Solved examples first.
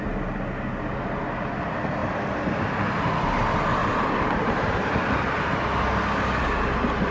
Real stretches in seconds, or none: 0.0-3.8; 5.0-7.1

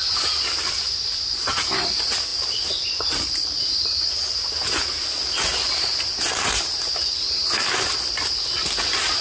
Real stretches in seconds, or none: 0.0-9.2

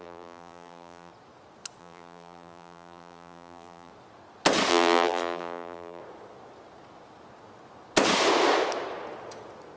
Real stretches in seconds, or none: 1.1-1.8; 3.9-4.7; 6.0-9.8

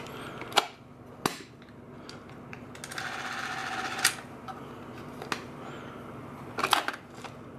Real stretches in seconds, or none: 0.0-7.6